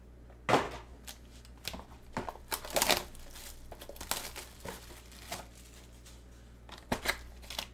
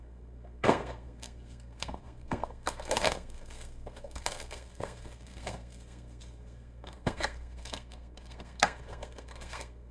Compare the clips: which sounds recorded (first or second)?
first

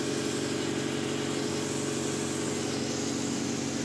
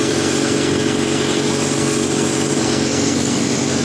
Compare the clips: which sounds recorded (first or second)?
first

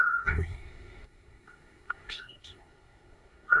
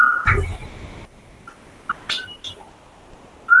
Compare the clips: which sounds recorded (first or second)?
second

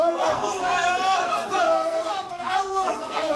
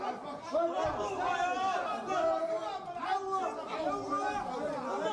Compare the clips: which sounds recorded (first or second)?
second